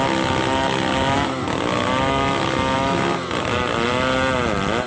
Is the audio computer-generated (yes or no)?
no